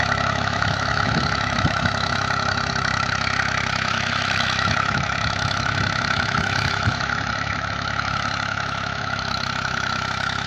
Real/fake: fake